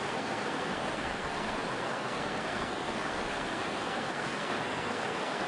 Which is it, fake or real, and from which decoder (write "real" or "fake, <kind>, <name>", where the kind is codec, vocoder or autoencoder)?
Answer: fake, codec, SNAC